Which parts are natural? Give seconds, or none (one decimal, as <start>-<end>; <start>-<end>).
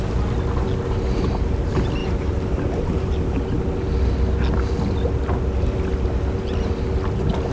0.0-2.0; 3.4-7.5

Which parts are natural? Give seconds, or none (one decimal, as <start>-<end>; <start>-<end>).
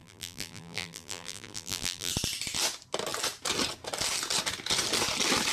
2.1-5.5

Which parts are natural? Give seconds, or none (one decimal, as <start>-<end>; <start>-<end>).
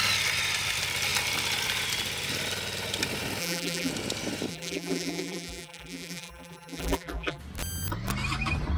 0.0-3.4; 3.9-4.5; 7.4-8.8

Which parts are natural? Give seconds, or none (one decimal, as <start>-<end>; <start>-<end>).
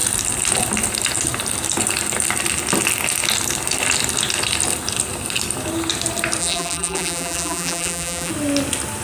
0.0-6.4; 8.3-9.0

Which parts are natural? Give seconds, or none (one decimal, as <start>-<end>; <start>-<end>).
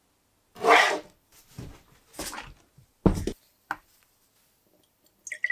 0.0-5.5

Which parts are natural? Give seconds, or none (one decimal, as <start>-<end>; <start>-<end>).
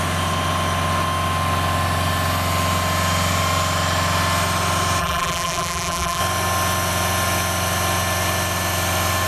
0.0-5.0; 6.2-9.3